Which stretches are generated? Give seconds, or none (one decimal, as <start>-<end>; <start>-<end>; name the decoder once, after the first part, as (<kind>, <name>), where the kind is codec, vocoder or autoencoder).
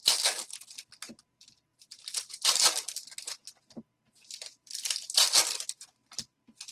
none